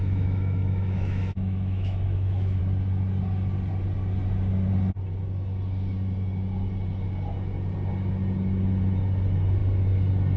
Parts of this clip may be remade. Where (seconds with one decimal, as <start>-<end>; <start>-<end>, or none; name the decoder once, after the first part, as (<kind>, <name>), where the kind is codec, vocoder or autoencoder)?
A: 0.0-2.6 (autoencoder, DAC-VAE)

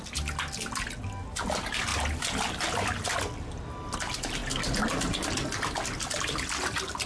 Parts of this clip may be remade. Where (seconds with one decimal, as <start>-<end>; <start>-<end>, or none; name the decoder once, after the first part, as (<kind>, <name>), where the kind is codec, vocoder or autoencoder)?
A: none

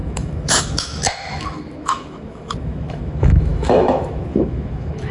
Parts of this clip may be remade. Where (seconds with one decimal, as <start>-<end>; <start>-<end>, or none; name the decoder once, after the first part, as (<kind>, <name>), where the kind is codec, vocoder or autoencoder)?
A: 0.0-5.1 (autoencoder, DAC-VAE)

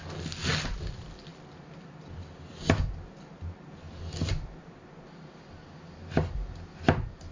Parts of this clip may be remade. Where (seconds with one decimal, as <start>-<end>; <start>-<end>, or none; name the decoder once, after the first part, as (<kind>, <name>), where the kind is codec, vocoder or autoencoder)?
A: none

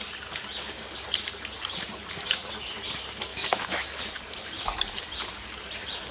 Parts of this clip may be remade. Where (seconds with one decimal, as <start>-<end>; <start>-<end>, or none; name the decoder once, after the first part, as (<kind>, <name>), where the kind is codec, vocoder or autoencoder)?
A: 3.3-4.0 (autoencoder, DAC-VAE)